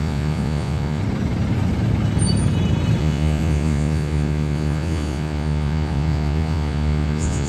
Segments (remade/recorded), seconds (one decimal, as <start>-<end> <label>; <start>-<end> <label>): 0.0-1.0 remade; 1.0-3.0 recorded; 3.0-7.5 remade